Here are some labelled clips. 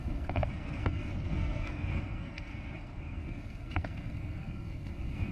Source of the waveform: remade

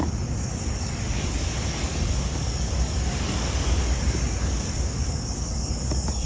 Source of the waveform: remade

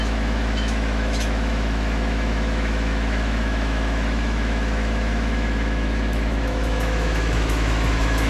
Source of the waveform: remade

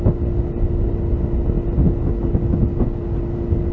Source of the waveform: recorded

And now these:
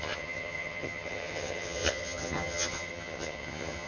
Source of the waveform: remade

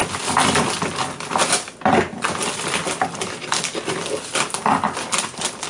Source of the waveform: recorded